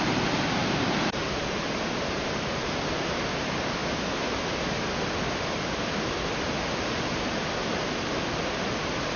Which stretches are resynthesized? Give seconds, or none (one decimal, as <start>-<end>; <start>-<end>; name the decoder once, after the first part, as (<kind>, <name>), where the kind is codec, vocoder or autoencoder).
0.6-2.8 (vocoder, BigVGAN v2)